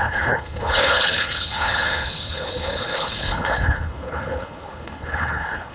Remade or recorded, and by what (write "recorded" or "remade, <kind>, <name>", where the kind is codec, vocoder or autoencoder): remade, codec, HILCodec